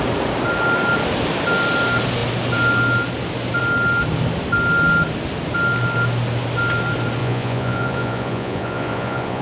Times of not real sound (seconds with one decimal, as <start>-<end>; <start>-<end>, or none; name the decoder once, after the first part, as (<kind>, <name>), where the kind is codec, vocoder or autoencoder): 7.2-9.4 (vocoder, Vocos)